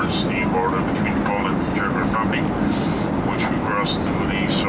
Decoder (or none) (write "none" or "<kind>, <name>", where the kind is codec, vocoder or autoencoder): none